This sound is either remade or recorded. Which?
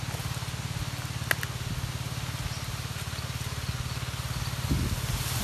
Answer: recorded